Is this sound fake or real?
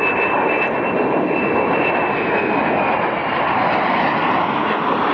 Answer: real